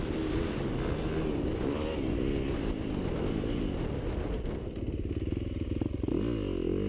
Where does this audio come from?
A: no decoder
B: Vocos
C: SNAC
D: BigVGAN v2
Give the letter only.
A